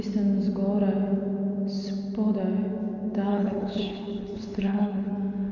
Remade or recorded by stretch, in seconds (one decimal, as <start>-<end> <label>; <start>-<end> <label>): 0.0-3.3 recorded; 3.3-5.1 remade; 5.1-5.5 recorded